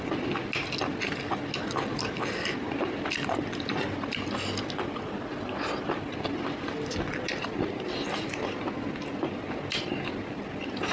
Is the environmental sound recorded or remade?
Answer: recorded